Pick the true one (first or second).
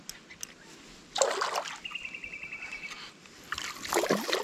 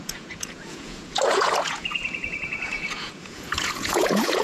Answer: first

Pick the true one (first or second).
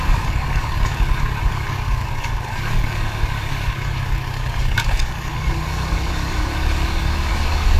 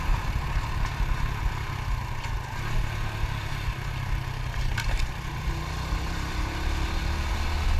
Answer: second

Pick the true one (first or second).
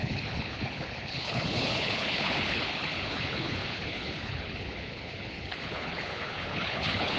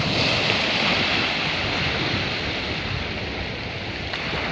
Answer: second